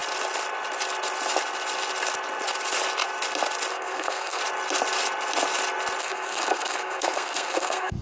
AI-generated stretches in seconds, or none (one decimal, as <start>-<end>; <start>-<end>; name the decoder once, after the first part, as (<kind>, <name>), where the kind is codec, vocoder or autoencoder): 3.7-4.4 (codec, SNAC); 6.0-8.0